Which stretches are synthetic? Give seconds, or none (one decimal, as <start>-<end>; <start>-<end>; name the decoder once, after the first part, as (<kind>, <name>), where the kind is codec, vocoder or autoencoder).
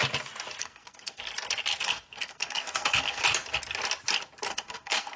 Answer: 0.6-1.2 (codec, SNAC); 1.7-3.2; 4.5-5.2